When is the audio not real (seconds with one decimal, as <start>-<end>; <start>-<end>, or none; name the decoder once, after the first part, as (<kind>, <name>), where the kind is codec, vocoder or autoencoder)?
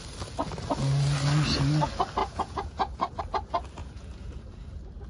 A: 2.2-3.2 (vocoder, Vocos); 3.8-4.4